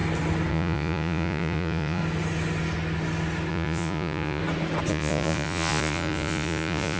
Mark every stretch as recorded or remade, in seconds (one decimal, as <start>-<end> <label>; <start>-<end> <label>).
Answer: 0.0-0.5 recorded; 0.5-2.0 remade; 2.0-3.5 recorded; 3.5-4.4 remade; 4.4-4.9 recorded; 4.9-7.0 remade